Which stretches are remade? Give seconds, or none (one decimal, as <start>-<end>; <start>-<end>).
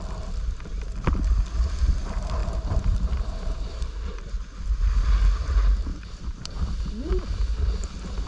2.4-4.2; 5.9-6.8